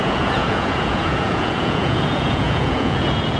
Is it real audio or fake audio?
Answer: fake